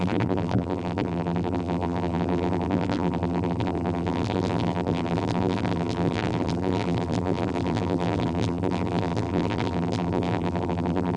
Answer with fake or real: fake